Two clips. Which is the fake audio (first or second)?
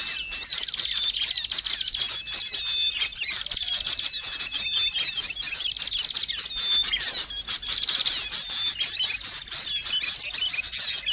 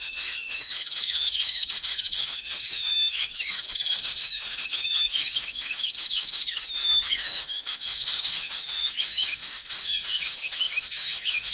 second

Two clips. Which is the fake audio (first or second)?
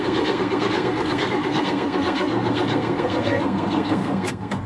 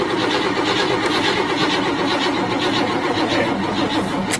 first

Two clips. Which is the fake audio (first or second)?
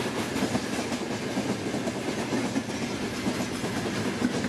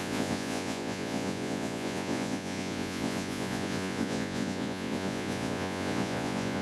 second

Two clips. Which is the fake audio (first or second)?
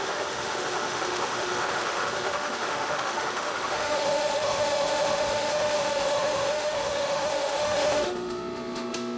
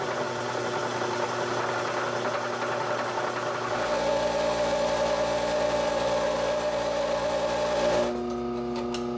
first